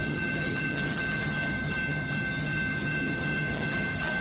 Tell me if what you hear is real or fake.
fake